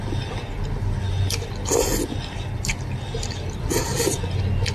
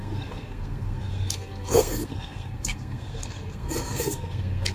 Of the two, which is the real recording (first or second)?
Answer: first